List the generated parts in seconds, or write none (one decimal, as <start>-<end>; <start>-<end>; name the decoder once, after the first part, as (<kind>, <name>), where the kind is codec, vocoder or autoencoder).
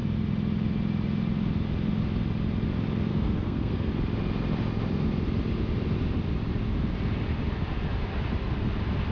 3.1-3.9 (codec, SNAC)